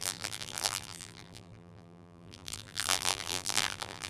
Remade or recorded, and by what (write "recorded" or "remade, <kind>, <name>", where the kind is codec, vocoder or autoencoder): remade, vocoder, BigVGAN v2